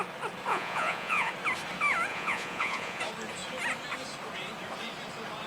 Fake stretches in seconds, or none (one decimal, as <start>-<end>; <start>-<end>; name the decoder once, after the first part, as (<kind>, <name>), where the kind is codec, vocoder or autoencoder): 0.5-1.3 (vocoder, Vocos); 2.1-3.0